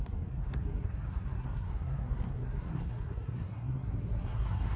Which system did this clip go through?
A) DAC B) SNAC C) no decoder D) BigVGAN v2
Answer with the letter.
B